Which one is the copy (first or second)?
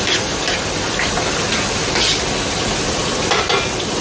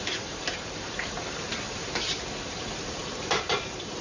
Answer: second